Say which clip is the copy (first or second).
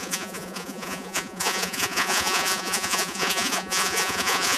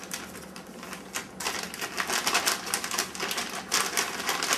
first